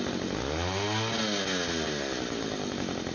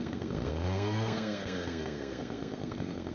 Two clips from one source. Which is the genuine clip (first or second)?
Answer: first